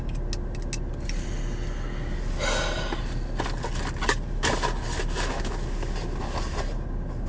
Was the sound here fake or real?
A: real